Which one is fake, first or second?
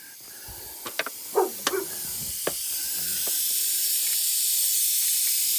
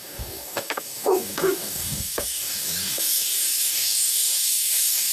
second